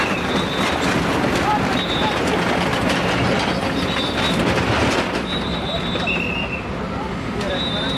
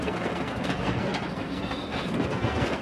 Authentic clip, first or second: first